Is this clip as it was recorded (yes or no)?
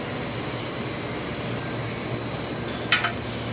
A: yes